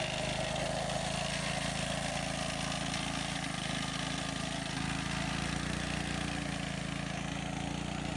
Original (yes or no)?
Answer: yes